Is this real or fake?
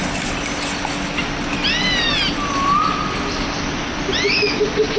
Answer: real